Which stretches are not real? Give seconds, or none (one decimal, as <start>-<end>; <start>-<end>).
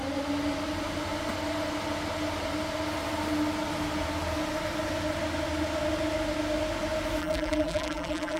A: 7.2-8.4